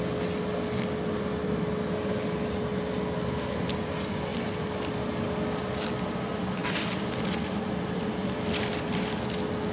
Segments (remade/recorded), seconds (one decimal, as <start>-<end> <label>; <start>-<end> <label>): 0.0-4.3 recorded; 4.3-5.3 remade; 5.3-6.6 recorded; 6.6-9.1 remade; 9.1-9.7 recorded

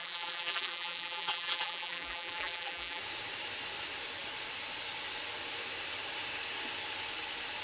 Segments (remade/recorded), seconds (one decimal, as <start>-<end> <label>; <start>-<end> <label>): 0.0-3.0 remade; 3.0-7.6 recorded

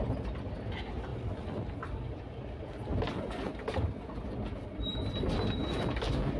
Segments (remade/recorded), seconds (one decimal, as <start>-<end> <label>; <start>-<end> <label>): 0.0-6.4 recorded

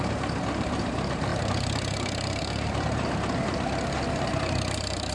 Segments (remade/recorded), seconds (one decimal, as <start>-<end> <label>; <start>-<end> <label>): 0.0-5.1 remade

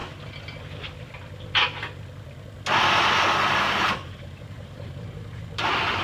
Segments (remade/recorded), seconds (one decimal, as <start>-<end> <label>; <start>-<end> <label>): 0.0-3.6 recorded; 3.6-6.0 remade